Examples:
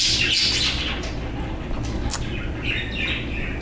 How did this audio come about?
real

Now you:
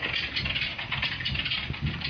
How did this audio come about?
real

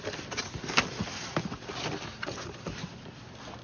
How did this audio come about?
real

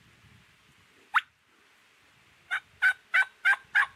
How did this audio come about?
real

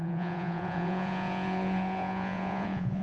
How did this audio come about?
fake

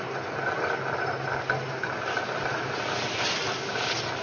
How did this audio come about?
real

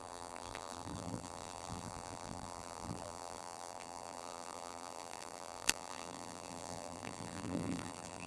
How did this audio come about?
fake